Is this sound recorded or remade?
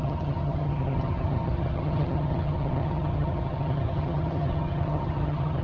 remade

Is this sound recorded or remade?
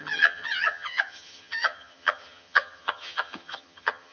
remade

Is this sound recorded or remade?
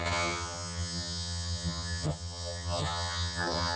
remade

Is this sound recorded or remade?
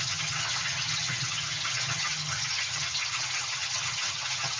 remade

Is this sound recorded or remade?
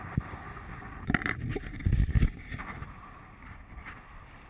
recorded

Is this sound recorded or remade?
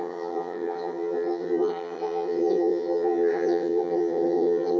remade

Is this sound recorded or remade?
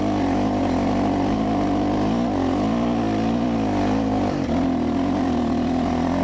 recorded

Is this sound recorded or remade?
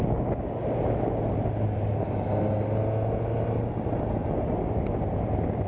recorded